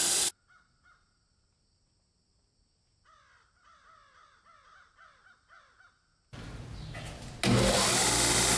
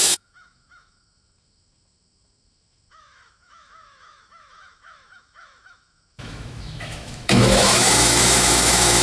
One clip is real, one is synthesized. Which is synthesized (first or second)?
second